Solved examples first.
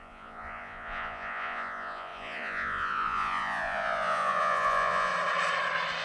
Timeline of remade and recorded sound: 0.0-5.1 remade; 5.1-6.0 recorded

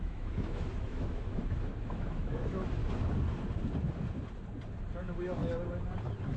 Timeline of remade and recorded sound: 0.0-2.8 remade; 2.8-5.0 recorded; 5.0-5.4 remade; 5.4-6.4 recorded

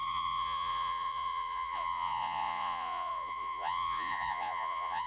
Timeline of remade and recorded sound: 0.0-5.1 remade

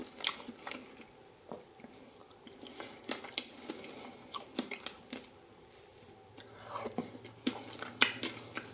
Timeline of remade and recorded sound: 0.0-8.7 recorded

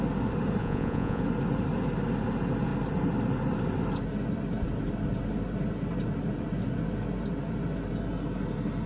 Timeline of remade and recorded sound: 0.0-0.6 recorded; 0.6-1.2 remade; 1.2-8.9 recorded